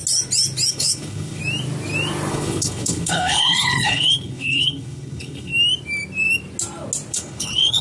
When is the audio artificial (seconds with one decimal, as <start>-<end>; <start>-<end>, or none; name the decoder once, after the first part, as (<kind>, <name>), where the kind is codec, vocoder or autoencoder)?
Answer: 0.7-1.4 (codec, HILCodec); 2.3-5.5; 7.1-7.8